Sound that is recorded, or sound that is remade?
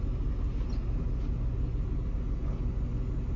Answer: recorded